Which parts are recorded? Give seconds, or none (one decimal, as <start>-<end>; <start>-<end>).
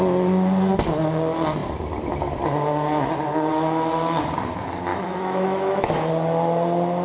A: 0.0-4.9; 6.1-7.0